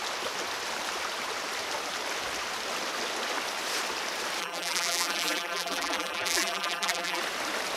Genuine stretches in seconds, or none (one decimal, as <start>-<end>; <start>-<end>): 0.0-4.4; 7.2-7.8

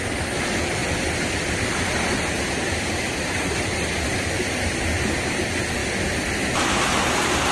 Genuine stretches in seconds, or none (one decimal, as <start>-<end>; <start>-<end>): 0.0-7.5

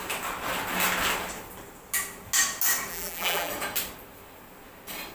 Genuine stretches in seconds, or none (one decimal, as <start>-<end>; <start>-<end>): 0.0-2.9; 3.5-5.1

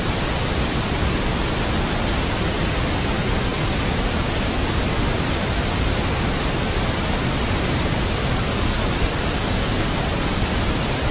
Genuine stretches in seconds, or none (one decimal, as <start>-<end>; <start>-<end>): 0.0-11.1

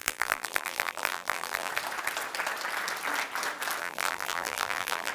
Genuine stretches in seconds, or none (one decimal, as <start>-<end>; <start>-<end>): 1.7-3.8

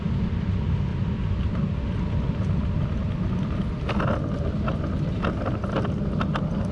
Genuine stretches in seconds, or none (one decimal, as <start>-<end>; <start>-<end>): 0.0-0.9; 1.7-6.7

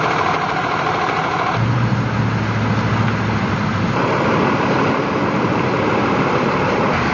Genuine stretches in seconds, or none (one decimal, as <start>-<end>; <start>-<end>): 1.9-6.2